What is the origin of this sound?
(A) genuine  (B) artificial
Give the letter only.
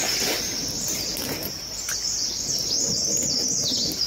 A